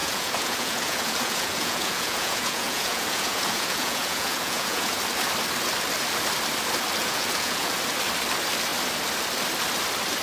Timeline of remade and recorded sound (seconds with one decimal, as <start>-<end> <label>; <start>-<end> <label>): 0.0-5.0 remade; 5.0-7.0 recorded; 7.0-7.7 remade; 7.7-10.2 recorded